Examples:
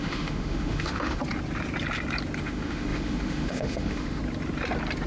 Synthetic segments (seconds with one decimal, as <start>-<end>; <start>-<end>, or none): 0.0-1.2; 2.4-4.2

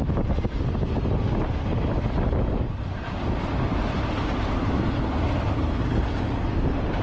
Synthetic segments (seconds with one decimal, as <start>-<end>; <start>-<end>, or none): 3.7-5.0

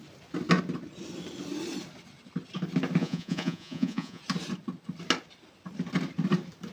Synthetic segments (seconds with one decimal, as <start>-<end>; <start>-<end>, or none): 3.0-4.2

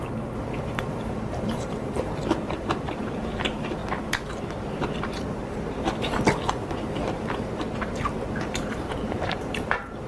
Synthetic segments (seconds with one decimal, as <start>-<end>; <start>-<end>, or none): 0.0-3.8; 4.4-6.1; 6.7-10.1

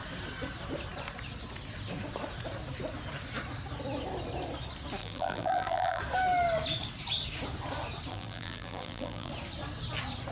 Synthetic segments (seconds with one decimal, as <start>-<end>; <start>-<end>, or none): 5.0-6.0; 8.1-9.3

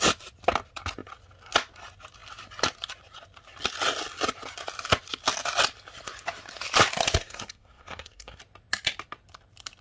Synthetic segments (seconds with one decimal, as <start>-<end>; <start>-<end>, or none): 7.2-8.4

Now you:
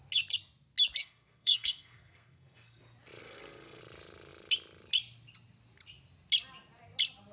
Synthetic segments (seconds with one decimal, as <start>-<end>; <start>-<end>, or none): 1.0-2.8; 3.2-3.8

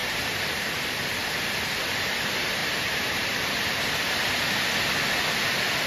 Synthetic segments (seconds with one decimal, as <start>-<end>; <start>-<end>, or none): 0.0-0.9; 2.6-3.9